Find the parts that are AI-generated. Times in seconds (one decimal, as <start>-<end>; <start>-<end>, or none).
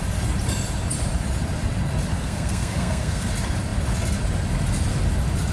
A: 2.1-3.3